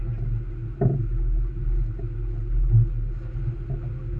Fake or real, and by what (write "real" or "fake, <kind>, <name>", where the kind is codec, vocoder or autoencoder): real